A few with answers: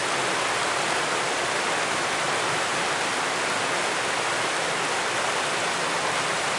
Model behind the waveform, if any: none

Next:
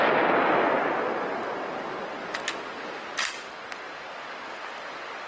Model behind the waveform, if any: none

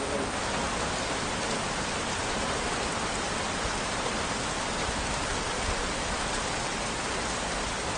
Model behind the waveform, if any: vocoder, BigVGAN v2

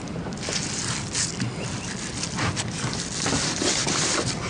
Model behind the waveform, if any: vocoder, BigVGAN v2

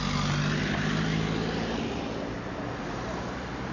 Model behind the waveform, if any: none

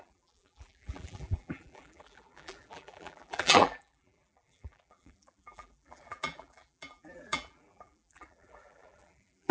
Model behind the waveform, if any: vocoder, BigVGAN v2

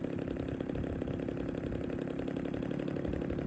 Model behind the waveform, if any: none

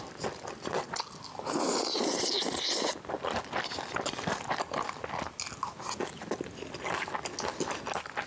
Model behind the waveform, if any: none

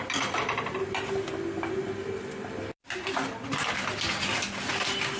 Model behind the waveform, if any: vocoder, BigVGAN v2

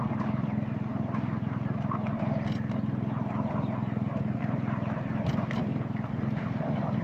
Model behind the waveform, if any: none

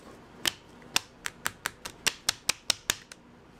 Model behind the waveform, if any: none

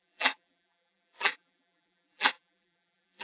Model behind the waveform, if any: vocoder, BigVGAN v2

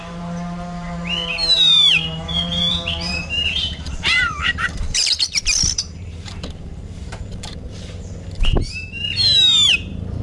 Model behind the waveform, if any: vocoder, BigVGAN v2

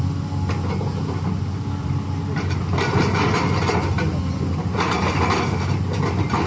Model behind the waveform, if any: none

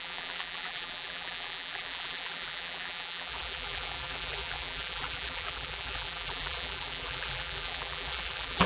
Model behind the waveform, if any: vocoder, BigVGAN v2